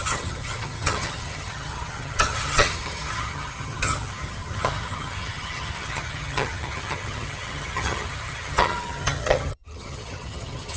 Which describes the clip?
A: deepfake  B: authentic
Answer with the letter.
A